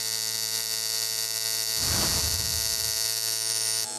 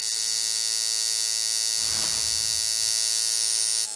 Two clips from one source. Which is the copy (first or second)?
first